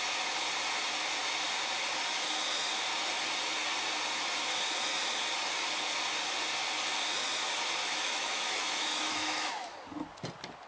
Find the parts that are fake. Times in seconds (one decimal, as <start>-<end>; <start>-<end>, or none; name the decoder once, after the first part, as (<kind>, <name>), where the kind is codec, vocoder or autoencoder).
7.8-9.5 (autoencoder, DAC-VAE)